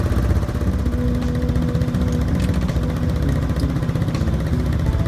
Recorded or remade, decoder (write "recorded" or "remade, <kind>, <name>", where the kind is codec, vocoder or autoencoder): recorded